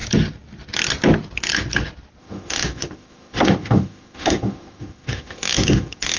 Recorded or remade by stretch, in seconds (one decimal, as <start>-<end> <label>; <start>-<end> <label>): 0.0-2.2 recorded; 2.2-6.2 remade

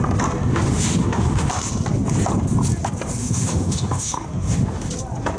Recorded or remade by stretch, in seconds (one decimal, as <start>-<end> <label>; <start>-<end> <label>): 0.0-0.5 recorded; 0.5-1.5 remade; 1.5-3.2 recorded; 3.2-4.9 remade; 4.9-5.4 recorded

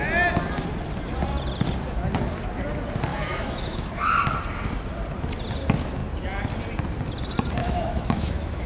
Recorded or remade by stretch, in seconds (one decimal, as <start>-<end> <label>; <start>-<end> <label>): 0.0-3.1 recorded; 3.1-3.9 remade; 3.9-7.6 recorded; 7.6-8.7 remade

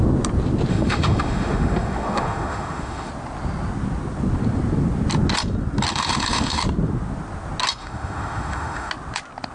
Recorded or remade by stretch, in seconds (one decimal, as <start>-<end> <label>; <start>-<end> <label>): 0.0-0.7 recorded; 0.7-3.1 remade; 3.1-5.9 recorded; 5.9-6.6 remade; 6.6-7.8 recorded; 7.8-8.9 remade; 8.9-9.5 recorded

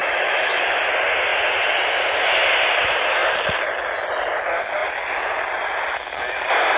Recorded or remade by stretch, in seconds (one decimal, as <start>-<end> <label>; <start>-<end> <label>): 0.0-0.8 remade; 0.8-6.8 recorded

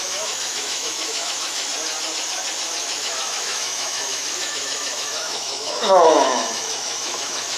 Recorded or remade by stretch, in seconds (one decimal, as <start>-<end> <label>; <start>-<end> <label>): 0.0-1.7 remade; 1.7-2.8 recorded; 2.8-7.6 remade

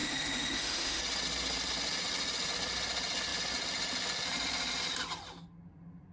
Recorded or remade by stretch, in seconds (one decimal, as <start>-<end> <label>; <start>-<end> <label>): 0.0-1.0 remade; 1.0-6.1 recorded